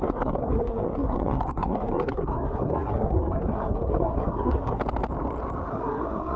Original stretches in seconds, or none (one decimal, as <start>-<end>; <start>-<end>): 4.8-5.7